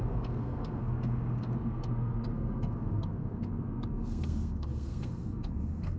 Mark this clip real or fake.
fake